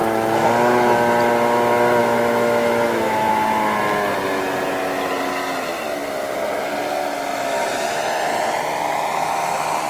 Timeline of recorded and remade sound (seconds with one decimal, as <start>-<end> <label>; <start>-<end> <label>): 0.0-0.5 remade; 0.5-2.0 recorded; 2.0-3.3 remade; 3.3-9.9 recorded